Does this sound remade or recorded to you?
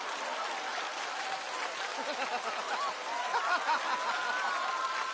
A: recorded